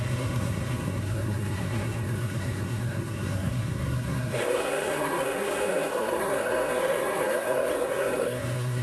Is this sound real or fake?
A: fake